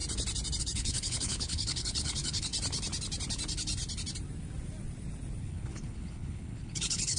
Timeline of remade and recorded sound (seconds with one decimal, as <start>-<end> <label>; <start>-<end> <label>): 0.0-0.6 recorded; 0.6-2.5 remade; 2.5-5.4 recorded; 5.4-7.2 remade